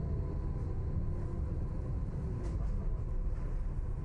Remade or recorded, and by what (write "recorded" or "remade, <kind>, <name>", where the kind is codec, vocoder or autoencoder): recorded